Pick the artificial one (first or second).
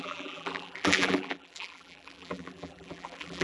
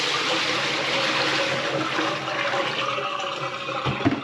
first